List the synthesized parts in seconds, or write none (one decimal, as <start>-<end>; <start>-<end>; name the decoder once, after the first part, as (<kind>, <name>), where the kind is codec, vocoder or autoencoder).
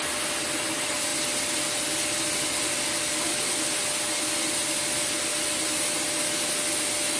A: none